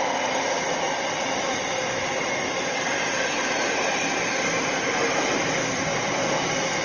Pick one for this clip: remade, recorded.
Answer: recorded